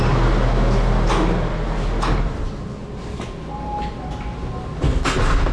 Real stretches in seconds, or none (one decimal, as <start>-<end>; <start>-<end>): 0.0-5.5